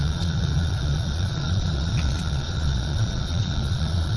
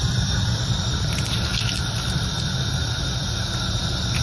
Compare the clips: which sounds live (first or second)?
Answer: second